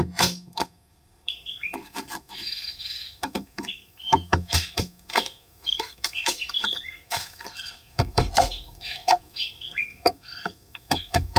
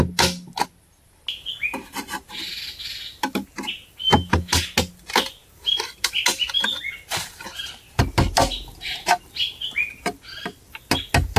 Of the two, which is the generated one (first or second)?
first